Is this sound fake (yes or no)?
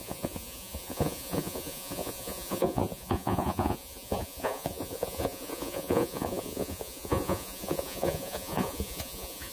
yes